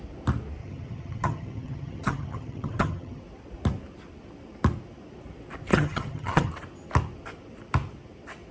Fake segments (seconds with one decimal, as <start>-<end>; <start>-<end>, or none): 0.6-3.2; 5.7-6.5